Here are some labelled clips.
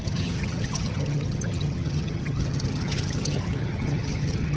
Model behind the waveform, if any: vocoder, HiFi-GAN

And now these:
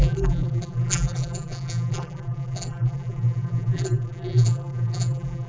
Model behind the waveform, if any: vocoder, BigVGAN v2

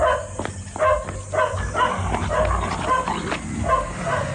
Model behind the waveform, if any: none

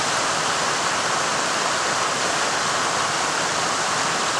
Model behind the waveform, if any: none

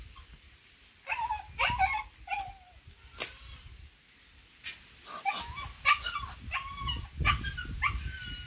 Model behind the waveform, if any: none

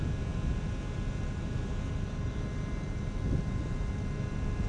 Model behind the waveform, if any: none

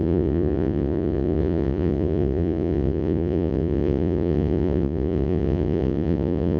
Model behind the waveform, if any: vocoder, Vocos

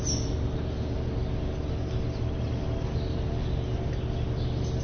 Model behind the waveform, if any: none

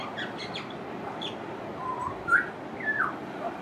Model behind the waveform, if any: none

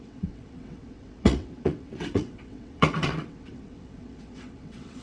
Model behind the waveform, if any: vocoder, WaveNeXt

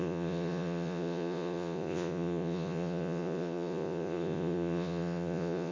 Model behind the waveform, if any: vocoder, Vocos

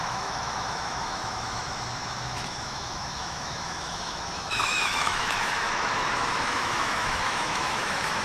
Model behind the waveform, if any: autoencoder, DAC-VAE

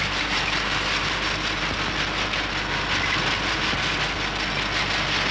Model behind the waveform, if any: none